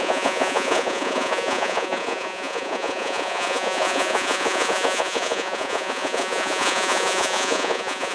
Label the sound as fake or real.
fake